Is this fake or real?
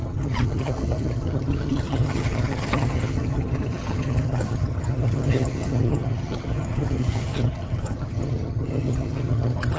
fake